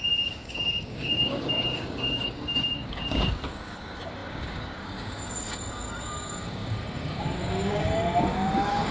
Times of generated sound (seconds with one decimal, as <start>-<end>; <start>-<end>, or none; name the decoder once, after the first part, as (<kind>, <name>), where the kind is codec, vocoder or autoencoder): 0.0-8.9 (codec, DAC)